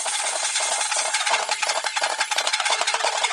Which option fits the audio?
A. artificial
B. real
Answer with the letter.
A